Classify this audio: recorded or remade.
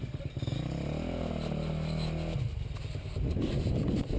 recorded